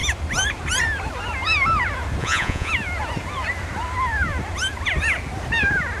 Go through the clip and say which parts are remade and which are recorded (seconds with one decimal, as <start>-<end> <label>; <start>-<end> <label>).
0.0-2.2 recorded; 2.2-2.7 remade; 2.7-6.0 recorded